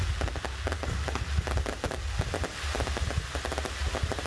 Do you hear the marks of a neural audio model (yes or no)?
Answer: no